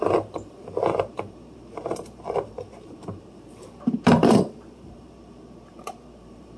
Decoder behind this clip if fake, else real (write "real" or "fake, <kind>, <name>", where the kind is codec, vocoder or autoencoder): fake, vocoder, BigVGAN v2